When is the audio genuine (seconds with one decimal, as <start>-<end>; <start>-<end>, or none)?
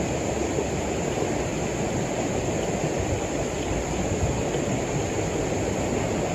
0.0-6.3